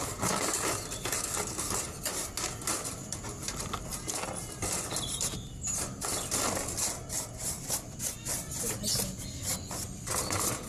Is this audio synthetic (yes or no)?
no